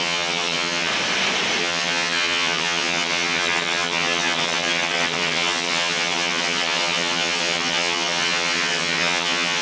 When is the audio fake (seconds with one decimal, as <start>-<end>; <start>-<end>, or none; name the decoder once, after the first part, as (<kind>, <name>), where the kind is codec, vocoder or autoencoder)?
0.0-0.9 (vocoder, HiFi-GAN); 1.6-9.6

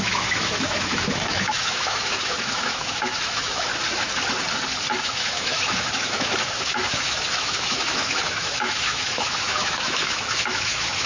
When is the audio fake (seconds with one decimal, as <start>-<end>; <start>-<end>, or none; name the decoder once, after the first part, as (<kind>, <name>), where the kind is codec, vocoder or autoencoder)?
0.0-3.7 (autoencoder, DAC-VAE); 5.0-11.1

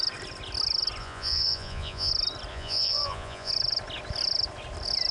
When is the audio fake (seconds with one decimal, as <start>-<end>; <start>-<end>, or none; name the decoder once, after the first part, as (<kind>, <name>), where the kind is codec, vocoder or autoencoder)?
1.0-2.1 (vocoder, Vocos); 2.5-3.5